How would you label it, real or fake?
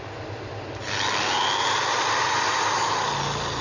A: real